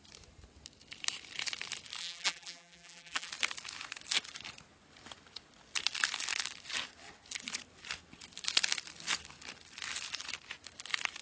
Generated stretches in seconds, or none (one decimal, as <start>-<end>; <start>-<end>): 2.0-3.3